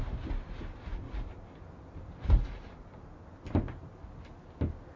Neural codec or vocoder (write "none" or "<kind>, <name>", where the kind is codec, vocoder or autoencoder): none